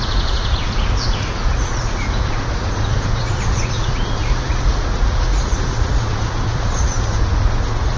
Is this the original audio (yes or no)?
no